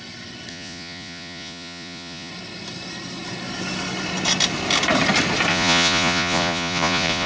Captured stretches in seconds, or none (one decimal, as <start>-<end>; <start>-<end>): 0.0-0.5; 2.3-5.5